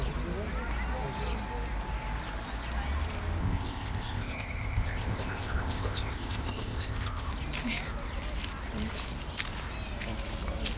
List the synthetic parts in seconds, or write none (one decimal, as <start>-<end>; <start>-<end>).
3.4-7.3